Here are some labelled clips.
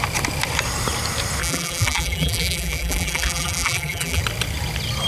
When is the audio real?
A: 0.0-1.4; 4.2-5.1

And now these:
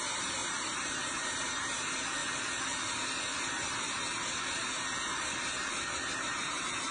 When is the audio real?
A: 2.2-6.1

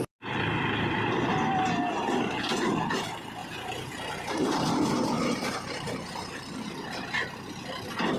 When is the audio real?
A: 0.0-3.4; 6.3-8.2

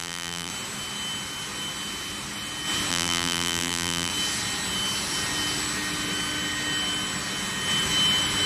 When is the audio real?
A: 0.5-2.9; 4.1-8.5

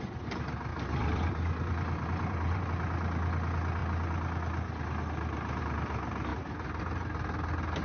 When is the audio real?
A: 0.0-0.7; 2.6-7.8

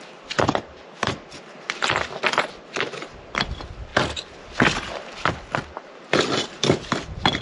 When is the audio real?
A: 0.0-7.4